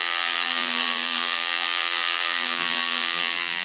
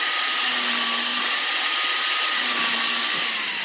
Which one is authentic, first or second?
second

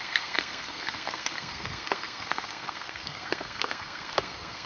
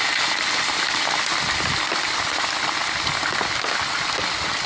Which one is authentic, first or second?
second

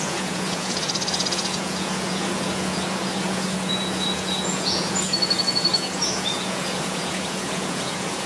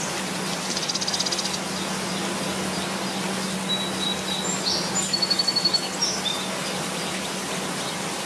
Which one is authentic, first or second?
second